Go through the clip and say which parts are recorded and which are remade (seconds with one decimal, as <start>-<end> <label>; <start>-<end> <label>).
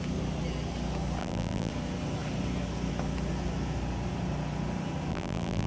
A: 0.0-1.2 recorded; 1.2-1.7 remade; 1.7-5.1 recorded; 5.1-5.7 remade